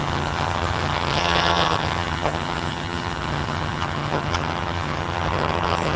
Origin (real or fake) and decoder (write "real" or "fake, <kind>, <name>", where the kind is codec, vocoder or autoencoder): fake, vocoder, HiFi-GAN